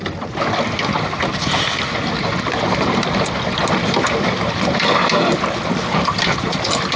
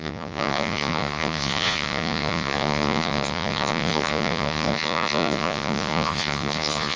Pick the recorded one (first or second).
first